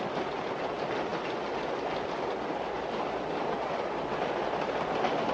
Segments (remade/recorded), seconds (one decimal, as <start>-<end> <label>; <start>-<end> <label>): 0.0-5.3 recorded